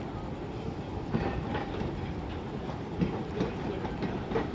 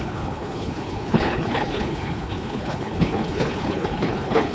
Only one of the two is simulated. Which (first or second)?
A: second